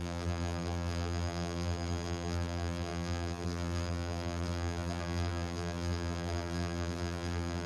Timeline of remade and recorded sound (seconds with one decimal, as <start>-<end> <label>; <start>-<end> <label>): 0.0-7.7 remade